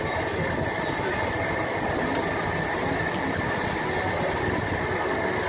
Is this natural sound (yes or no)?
yes